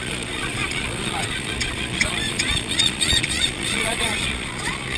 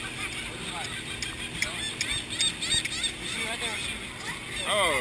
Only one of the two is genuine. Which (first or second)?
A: second